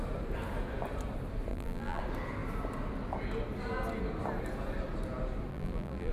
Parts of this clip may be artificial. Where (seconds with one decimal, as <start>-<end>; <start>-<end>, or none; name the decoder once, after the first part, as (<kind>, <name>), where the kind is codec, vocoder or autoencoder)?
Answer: 1.5-2.0 (vocoder, BigVGAN v2); 5.5-6.1